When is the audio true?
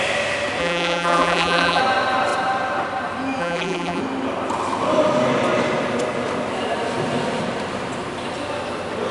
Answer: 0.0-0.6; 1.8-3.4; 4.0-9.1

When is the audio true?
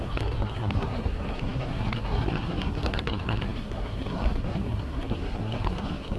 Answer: none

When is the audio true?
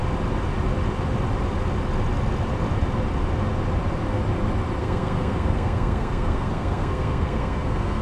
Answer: 0.0-4.8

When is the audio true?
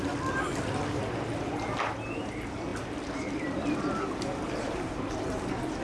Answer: 0.0-5.8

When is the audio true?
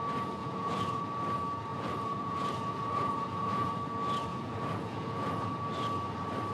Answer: 0.0-0.4; 1.0-1.7; 3.7-4.3; 5.5-6.5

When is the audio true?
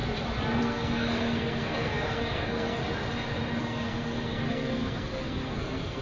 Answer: 0.0-0.6; 2.8-3.6